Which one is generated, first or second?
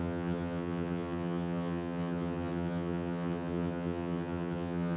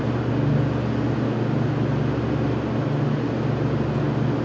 first